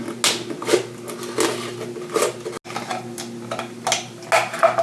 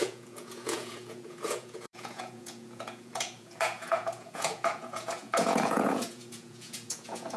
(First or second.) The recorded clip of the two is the first